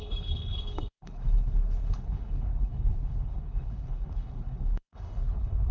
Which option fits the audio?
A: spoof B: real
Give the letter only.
A